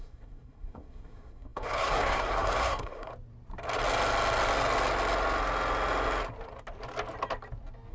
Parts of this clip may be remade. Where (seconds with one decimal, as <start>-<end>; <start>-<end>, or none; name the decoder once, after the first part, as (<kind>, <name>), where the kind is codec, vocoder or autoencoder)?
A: 0.0-3.1 (codec, SNAC)